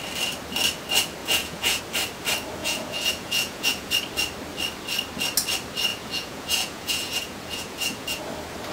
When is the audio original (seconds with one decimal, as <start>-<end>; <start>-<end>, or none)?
0.0-1.2; 1.8-2.6; 3.9-5.9; 8.2-8.7